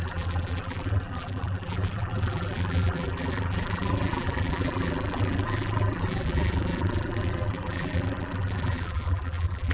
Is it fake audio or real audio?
fake